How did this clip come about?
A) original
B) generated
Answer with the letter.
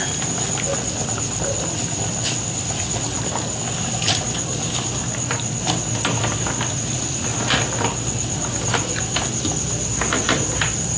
A